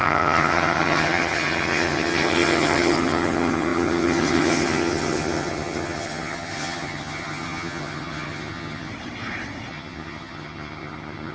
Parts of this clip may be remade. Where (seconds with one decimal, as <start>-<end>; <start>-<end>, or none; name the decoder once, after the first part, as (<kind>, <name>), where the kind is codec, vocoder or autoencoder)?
0.0-8.9 (vocoder, HiFi-GAN); 9.7-11.3